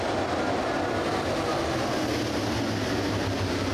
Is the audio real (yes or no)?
yes